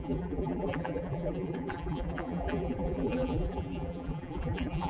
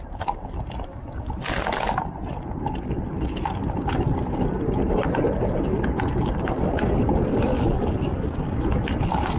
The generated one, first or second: first